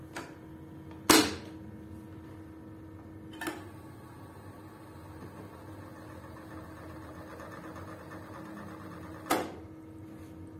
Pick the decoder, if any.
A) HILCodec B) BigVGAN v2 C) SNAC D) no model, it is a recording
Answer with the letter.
D